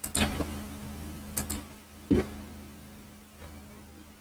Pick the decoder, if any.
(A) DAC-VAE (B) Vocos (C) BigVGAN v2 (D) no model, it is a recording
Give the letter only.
D